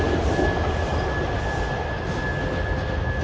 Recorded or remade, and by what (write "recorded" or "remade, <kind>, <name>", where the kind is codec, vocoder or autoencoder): recorded